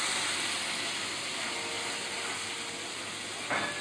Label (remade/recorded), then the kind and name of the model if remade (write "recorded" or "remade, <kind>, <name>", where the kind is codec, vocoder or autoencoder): recorded